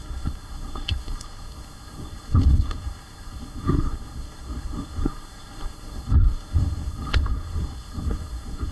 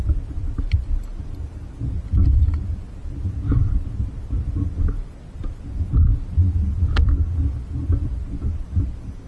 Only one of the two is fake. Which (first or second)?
first